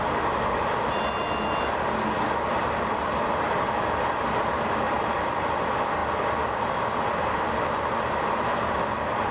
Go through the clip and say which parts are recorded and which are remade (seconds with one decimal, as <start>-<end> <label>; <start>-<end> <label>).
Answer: 0.0-9.3 recorded